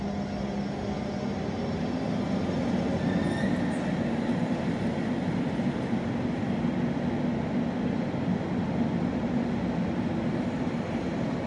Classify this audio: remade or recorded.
recorded